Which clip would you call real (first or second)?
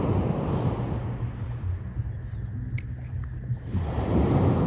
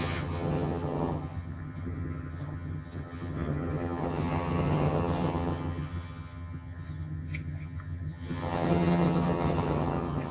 first